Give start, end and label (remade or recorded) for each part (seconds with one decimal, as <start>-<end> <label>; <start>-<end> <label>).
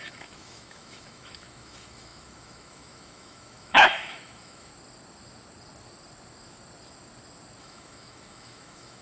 0.0-4.7 remade; 4.7-7.6 recorded; 7.6-9.0 remade